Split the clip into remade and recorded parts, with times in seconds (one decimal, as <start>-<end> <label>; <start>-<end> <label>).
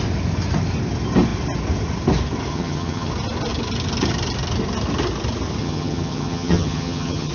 0.0-2.5 recorded; 2.5-3.1 remade; 3.1-5.6 recorded; 5.6-7.3 remade